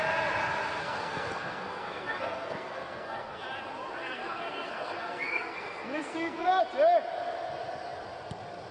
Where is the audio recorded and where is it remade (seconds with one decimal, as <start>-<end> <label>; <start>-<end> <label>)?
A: 0.0-0.8 recorded; 0.8-3.4 remade; 3.4-4.0 recorded; 4.0-6.6 remade; 6.6-8.7 recorded